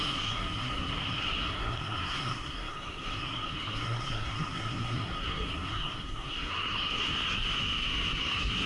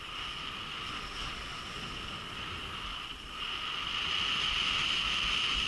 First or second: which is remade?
first